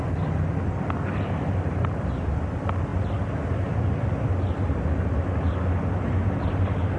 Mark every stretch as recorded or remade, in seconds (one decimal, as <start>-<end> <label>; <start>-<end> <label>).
0.0-2.9 remade; 2.9-6.5 recorded; 6.5-7.0 remade